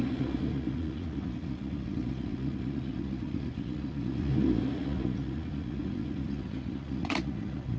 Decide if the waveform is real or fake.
fake